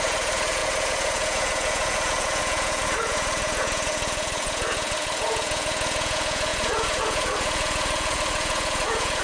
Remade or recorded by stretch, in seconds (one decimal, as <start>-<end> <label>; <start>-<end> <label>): 0.0-9.2 remade